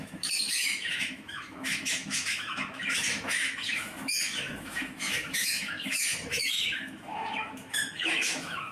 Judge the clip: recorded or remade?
remade